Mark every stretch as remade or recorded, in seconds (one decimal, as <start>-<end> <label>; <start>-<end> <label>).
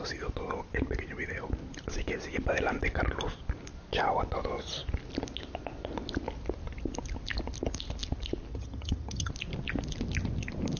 0.0-8.5 recorded; 8.5-9.3 remade; 9.3-10.8 recorded